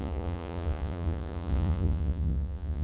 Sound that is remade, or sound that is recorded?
remade